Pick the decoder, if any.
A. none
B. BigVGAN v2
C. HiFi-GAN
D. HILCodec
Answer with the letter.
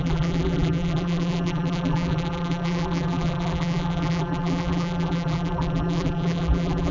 B